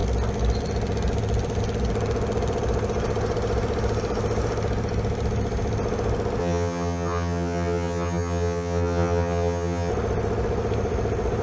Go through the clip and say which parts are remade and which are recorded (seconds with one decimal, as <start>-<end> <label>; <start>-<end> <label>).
0.0-6.4 recorded; 6.4-9.9 remade; 9.9-11.4 recorded